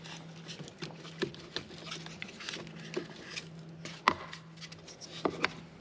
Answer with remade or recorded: recorded